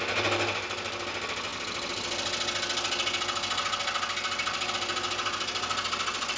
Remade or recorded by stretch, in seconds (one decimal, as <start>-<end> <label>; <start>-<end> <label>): 0.0-6.4 recorded